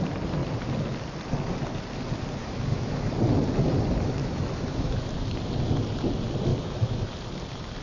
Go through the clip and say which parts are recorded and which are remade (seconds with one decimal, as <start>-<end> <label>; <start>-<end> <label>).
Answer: 0.0-2.4 recorded; 2.4-3.1 remade; 3.1-4.2 recorded; 4.2-5.1 remade; 5.1-6.5 recorded; 6.5-7.1 remade; 7.1-7.8 recorded